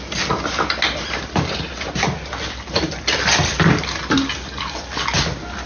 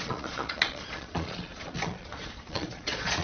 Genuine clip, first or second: first